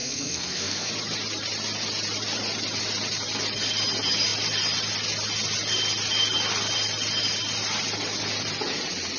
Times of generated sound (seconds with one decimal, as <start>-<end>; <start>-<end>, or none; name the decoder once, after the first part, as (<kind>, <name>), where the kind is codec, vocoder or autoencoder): 0.0-0.9 (codec, SNAC)